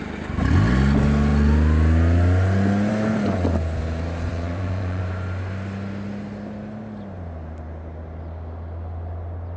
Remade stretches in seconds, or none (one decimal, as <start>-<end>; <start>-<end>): 4.3-5.0